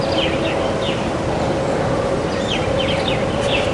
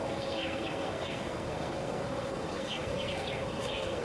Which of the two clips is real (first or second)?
first